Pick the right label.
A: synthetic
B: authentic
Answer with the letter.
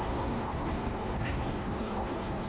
A